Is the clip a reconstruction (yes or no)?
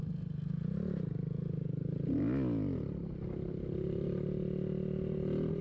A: no